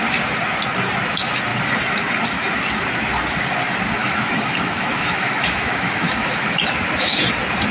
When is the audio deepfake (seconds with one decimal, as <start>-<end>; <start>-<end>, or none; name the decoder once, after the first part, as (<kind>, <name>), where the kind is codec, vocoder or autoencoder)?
4.0-7.2 (autoencoder, DAC-VAE)